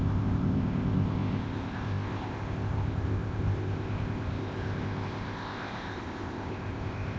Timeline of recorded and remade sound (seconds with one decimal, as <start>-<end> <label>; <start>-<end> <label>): 0.0-7.2 remade